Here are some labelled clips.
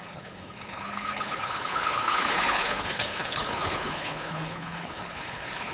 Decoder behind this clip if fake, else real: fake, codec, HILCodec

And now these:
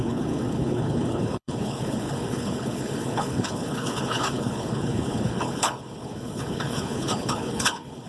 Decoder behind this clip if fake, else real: fake, codec, HILCodec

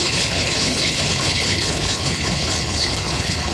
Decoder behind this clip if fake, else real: fake, codec, HILCodec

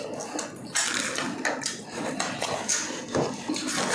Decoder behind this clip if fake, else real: real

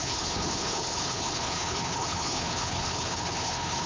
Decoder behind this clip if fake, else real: fake, codec, HILCodec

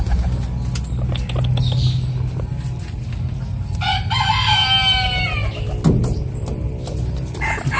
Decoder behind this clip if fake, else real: real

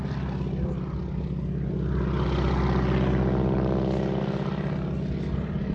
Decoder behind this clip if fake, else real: real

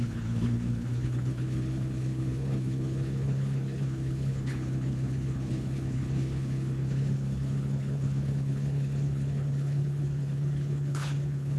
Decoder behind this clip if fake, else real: fake, codec, HILCodec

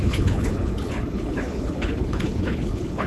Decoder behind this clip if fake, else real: fake, codec, HILCodec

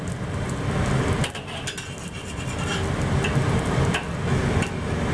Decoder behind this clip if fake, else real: real